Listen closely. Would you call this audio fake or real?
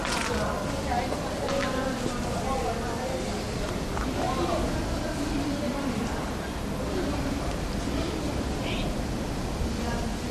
real